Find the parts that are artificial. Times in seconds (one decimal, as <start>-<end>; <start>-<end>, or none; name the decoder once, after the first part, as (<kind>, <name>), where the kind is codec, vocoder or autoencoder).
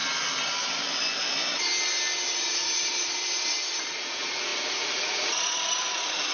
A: 3.8-6.3 (vocoder, Vocos)